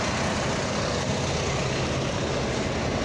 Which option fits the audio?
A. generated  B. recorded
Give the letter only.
B